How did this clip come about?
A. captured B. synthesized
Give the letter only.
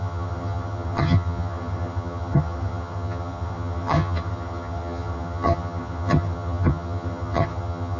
B